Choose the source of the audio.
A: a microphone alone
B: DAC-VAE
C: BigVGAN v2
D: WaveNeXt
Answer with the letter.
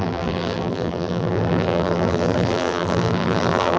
C